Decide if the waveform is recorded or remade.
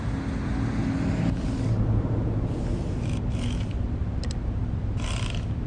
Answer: recorded